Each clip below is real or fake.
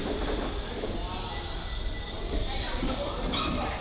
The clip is fake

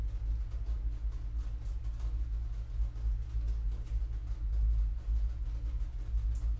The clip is real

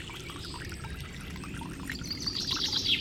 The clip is real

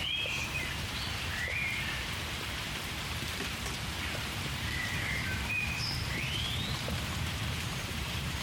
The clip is fake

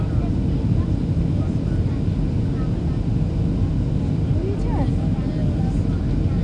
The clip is real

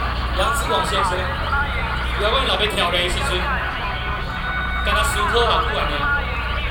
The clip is real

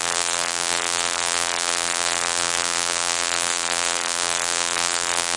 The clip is fake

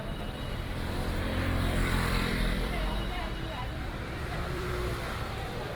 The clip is fake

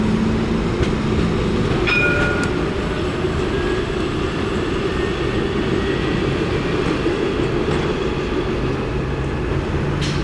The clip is real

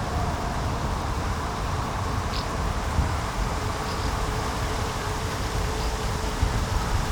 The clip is fake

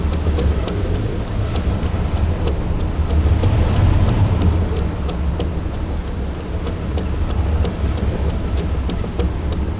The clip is real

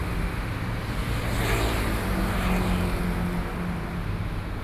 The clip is real